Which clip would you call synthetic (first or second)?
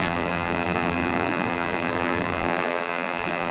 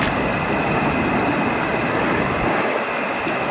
first